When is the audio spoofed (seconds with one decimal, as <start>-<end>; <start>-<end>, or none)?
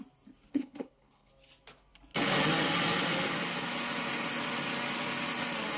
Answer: 0.5-1.3